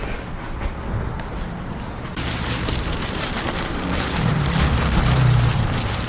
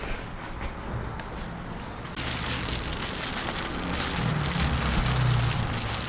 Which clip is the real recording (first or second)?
second